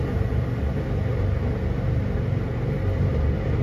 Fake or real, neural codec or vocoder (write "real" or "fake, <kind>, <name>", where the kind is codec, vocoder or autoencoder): real